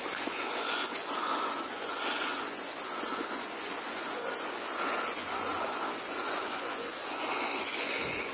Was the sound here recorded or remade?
remade